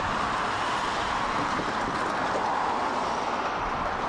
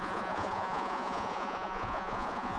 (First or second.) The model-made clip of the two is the second